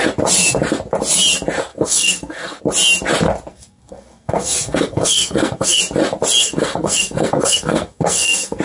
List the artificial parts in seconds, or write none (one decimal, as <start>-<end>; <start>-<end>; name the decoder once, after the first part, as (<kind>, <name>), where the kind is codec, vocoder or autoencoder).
1.7-2.6 (codec, SNAC); 3.5-5.8; 6.4-8.6